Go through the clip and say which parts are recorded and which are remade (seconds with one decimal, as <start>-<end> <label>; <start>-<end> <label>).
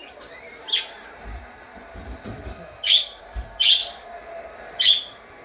0.0-3.2 remade; 3.2-5.4 recorded